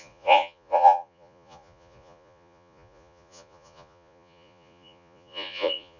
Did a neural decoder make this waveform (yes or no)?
yes